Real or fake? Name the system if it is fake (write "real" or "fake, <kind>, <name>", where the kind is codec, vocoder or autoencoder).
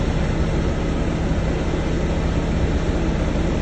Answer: real